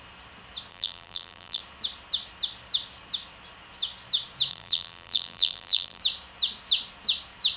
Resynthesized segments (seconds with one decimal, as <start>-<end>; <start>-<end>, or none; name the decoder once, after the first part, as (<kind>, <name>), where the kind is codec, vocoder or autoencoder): 0.7-1.6 (vocoder, BigVGAN v2); 4.5-6.0